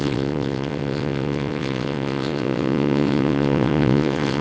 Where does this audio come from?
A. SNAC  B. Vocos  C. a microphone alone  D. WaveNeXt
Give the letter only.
D